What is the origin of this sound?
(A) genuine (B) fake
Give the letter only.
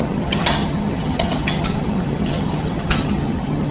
B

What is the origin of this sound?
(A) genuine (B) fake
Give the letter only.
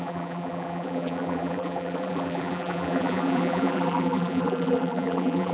B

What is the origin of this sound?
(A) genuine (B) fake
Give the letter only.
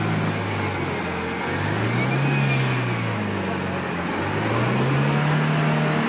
A